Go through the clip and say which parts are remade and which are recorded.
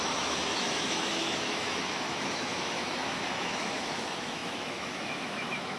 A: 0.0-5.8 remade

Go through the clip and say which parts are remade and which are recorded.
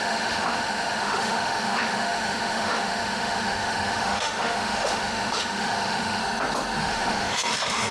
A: 0.0-6.2 remade; 6.2-6.8 recorded; 6.8-7.9 remade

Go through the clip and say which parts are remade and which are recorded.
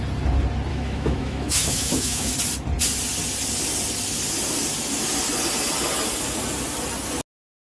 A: 0.0-0.7 recorded; 0.7-2.3 remade; 2.3-7.8 recorded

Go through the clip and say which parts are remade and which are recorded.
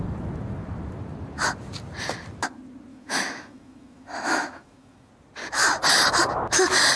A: 0.0-2.9 recorded; 2.9-5.1 remade; 5.1-7.0 recorded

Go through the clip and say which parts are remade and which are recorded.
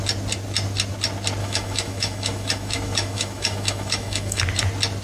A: 0.0-1.4 recorded; 1.4-4.4 remade; 4.4-5.0 recorded